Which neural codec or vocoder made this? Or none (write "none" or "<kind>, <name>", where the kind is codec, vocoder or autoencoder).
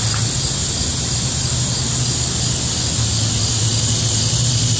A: none